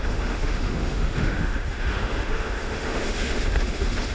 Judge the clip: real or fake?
fake